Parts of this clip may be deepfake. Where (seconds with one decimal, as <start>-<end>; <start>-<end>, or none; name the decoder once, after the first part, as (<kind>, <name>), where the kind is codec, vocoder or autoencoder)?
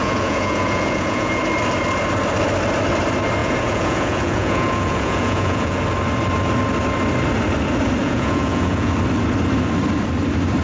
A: 0.0-1.4 (vocoder, Vocos); 3.4-5.8; 8.0-8.9